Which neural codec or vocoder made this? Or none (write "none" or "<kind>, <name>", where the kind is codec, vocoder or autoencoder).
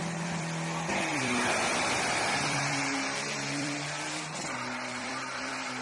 vocoder, BigVGAN v2